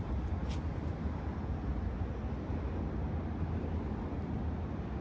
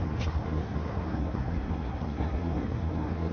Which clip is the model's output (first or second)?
second